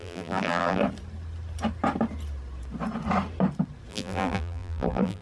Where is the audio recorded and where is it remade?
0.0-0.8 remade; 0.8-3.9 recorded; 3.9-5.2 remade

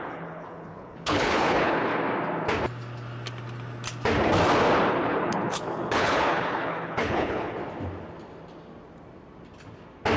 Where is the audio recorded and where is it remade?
0.0-1.9 remade; 1.9-4.9 recorded; 4.9-7.6 remade; 7.6-10.2 recorded

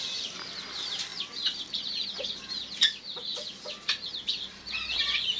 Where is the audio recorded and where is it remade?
0.0-5.4 recorded